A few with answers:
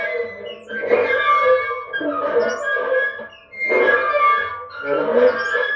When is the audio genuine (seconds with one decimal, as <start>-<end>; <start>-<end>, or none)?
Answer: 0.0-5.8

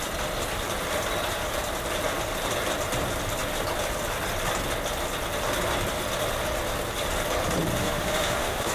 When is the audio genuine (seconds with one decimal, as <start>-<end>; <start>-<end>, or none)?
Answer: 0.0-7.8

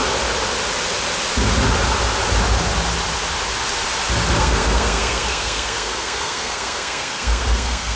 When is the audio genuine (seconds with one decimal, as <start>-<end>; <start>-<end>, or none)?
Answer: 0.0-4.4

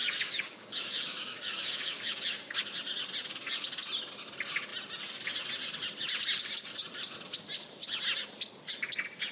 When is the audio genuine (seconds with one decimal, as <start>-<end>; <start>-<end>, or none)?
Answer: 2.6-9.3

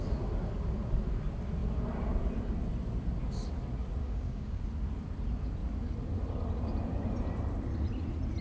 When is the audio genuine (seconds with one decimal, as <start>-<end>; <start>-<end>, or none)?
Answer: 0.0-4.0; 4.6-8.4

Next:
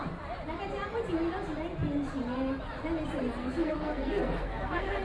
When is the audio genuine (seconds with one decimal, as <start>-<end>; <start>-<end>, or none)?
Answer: 0.0-3.4

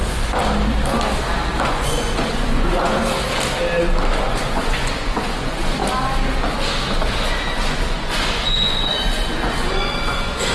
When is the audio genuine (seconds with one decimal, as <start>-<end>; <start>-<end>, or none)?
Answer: 0.4-1.6; 3.0-4.2; 5.8-7.1

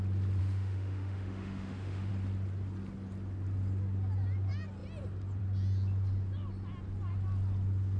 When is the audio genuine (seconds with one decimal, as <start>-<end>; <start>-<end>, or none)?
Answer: 0.0-0.4; 2.1-8.0